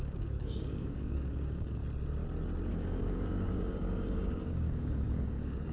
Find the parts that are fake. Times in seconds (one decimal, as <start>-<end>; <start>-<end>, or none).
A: 0.0-1.8; 2.7-5.7